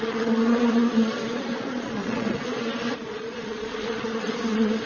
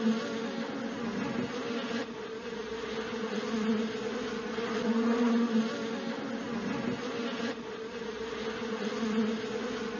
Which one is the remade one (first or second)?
first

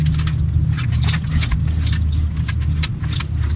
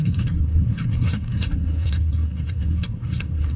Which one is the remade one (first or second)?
second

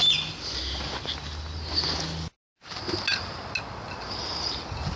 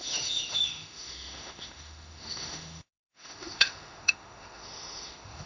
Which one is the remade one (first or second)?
second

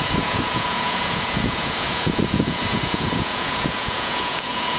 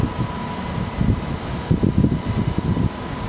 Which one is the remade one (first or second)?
first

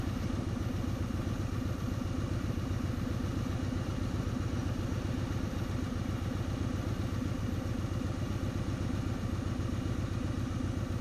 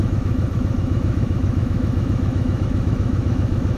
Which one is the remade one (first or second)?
second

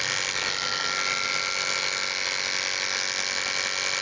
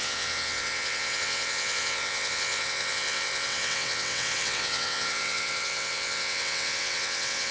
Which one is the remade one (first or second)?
second